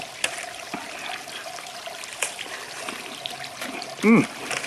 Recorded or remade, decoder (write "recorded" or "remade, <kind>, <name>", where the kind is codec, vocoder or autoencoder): recorded